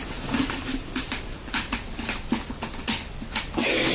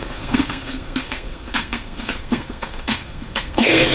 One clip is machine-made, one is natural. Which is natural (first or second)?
first